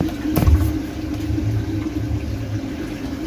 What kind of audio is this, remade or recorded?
recorded